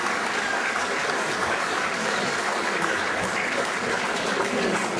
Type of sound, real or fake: fake